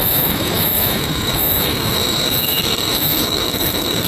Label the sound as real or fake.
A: fake